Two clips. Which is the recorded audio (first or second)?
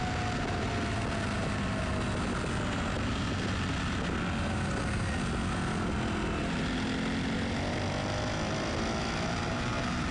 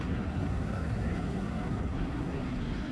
first